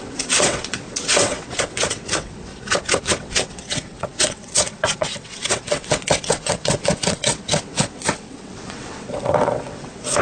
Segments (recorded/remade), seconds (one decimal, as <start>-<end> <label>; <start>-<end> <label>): 0.0-2.5 remade; 2.5-3.0 recorded; 3.0-10.2 remade